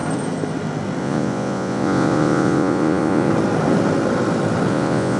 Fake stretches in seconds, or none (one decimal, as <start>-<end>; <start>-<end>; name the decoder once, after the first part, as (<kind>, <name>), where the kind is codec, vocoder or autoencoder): 1.0-3.3 (vocoder, Vocos); 4.7-5.2